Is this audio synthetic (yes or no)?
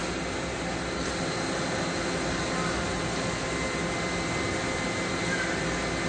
no